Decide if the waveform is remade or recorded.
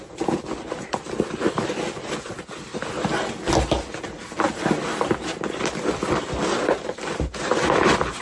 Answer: recorded